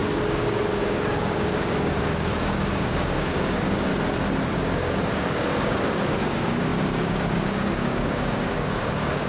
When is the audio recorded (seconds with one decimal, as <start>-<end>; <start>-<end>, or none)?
3.9-4.5